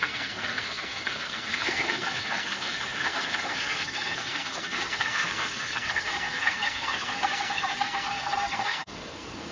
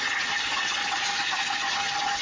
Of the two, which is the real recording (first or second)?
second